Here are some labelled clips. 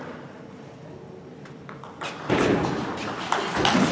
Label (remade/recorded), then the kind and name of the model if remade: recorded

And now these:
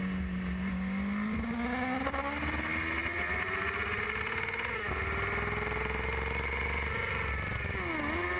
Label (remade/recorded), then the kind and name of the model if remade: recorded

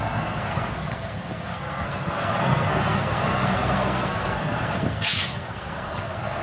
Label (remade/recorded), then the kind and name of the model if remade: remade, codec, SNAC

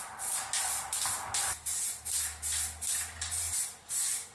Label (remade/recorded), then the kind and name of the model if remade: recorded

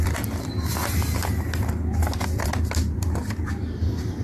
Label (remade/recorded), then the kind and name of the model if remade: remade, vocoder, BigVGAN v2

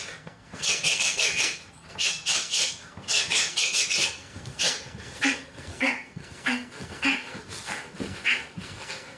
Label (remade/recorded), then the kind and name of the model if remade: remade, codec, SNAC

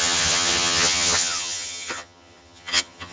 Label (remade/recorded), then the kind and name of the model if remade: remade, vocoder, HiFi-GAN